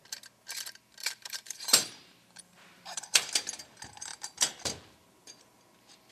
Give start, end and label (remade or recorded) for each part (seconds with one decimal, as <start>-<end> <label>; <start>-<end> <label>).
0.0-1.0 recorded; 1.0-3.3 remade; 3.3-4.1 recorded; 4.1-5.6 remade; 5.6-6.1 recorded